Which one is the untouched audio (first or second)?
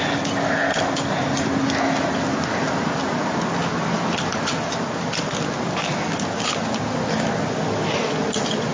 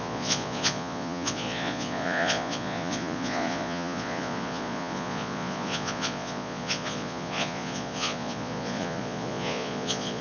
first